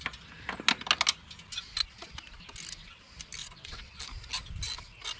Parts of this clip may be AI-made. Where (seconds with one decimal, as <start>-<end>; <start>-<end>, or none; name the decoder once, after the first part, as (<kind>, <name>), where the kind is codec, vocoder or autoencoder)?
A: 3.4-4.0 (vocoder, WaveNeXt)